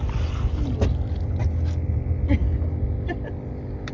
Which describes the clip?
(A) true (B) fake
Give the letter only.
A